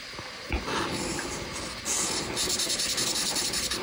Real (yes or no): yes